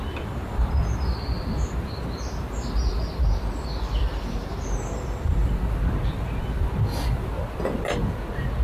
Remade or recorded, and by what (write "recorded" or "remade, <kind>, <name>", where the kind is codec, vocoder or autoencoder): recorded